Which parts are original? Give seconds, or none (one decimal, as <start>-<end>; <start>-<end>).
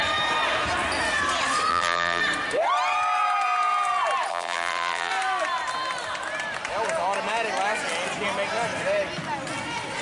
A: 0.0-1.7; 2.2-4.3; 5.1-10.0